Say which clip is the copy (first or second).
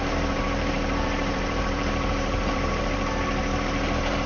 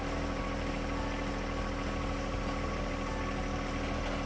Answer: first